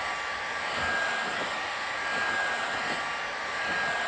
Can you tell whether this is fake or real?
real